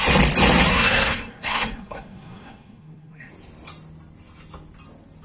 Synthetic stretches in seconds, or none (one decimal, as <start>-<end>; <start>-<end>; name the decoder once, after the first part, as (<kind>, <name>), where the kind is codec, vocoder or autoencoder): 0.7-3.3 (codec, SNAC)